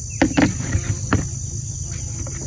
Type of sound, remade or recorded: recorded